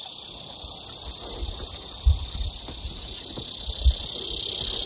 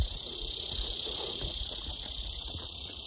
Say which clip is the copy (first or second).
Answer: second